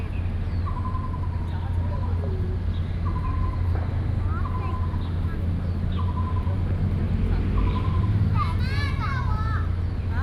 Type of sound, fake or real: real